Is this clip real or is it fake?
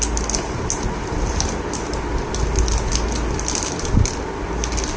real